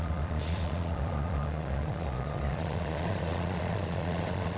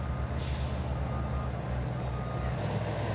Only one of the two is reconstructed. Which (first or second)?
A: first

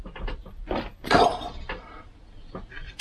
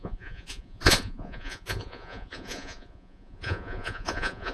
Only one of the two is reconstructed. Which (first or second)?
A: second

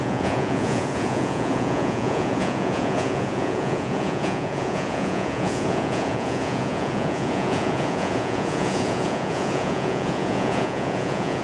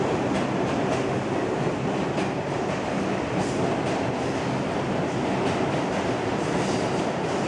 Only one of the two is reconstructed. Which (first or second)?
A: first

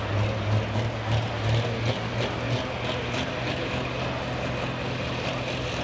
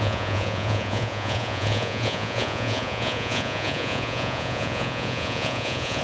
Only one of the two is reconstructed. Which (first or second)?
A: second